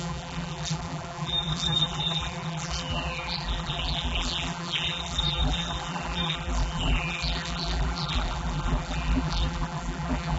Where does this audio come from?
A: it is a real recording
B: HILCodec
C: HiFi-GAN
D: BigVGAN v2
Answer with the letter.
D